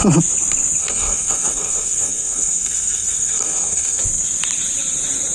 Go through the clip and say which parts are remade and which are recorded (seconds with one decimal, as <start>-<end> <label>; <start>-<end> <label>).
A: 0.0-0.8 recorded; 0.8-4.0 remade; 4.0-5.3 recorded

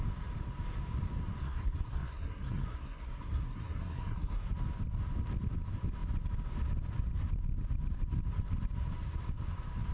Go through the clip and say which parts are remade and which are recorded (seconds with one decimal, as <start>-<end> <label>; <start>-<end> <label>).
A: 0.0-1.4 recorded; 1.4-4.5 remade; 4.5-9.9 recorded

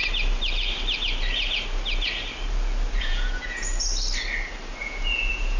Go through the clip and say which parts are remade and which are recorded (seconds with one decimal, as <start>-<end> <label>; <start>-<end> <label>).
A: 0.0-3.0 recorded; 3.0-3.7 remade; 3.7-4.8 recorded; 4.8-5.6 remade

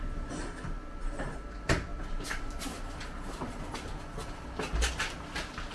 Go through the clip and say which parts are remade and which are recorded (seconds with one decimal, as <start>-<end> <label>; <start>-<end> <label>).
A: 0.0-5.7 recorded